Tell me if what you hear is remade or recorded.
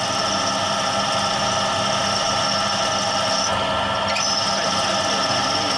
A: recorded